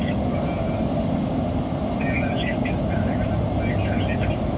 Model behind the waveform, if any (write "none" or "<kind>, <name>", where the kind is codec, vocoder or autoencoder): none